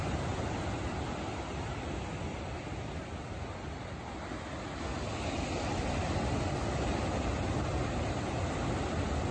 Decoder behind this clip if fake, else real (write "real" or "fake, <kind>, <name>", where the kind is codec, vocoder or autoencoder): real